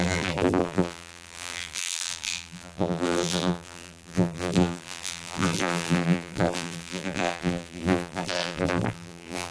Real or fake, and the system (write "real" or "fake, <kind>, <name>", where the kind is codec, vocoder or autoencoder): fake, vocoder, BigVGAN v2